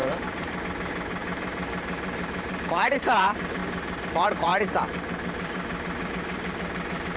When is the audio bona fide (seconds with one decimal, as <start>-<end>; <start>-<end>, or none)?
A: 3.6-4.1